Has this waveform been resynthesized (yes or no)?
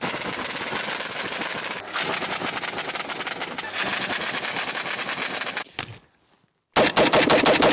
no